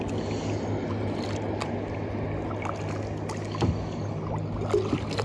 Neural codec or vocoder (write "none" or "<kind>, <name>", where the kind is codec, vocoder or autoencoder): none